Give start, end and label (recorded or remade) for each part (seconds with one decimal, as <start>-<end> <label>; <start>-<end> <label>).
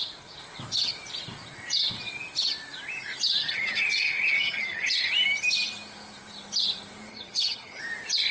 0.0-3.4 recorded; 3.4-5.1 remade; 5.1-7.1 recorded; 7.1-7.8 remade; 7.8-8.3 recorded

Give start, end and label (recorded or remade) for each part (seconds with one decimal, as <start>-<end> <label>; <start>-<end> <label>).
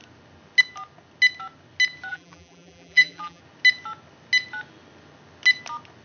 0.0-2.1 recorded; 2.1-3.4 remade; 3.4-6.0 recorded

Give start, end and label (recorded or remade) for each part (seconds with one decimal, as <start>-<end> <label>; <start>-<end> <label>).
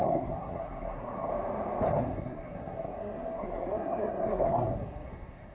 0.0-1.3 remade; 1.3-1.9 recorded; 1.9-5.5 remade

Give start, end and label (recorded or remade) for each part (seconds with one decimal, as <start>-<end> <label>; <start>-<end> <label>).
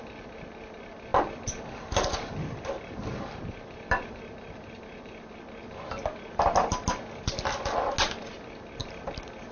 0.0-1.1 recorded; 1.1-5.3 remade; 5.3-9.5 recorded